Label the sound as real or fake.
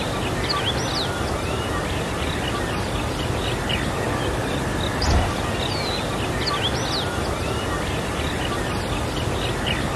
real